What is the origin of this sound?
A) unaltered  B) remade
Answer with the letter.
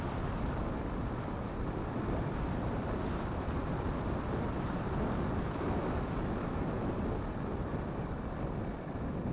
B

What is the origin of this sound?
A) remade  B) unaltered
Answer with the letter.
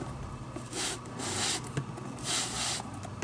B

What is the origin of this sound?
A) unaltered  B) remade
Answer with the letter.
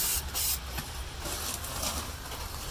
A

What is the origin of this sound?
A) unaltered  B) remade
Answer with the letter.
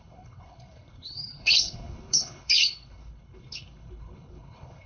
B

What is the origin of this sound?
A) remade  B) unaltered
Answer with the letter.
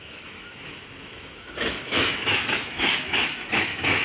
A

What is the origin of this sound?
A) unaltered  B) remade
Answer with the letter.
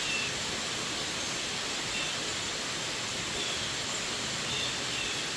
B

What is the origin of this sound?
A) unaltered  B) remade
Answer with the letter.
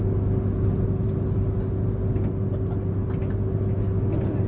A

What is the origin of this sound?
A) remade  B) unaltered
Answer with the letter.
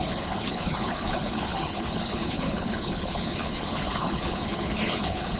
A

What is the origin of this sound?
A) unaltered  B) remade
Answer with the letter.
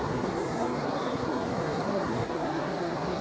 B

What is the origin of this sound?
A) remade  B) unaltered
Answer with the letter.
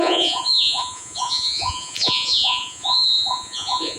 A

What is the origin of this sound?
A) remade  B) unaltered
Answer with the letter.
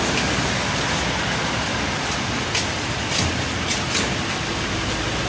B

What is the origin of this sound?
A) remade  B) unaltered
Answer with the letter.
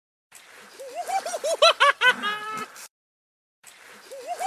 A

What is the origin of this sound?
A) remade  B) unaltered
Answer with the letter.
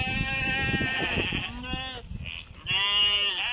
B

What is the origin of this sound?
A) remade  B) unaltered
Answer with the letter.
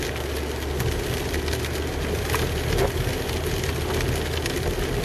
B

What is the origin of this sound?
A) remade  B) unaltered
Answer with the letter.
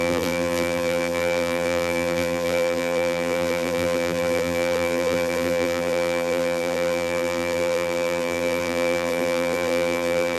A